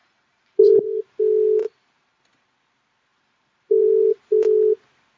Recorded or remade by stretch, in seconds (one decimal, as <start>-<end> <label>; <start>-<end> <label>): 0.0-1.2 remade; 1.2-1.6 recorded; 1.6-2.2 remade; 2.2-3.1 recorded; 3.1-4.2 remade; 4.2-5.2 recorded